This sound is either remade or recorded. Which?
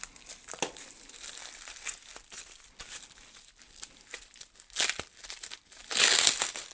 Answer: recorded